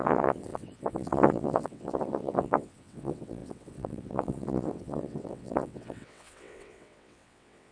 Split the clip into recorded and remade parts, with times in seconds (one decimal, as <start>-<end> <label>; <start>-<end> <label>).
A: 0.0-7.7 remade